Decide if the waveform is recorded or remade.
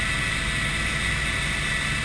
recorded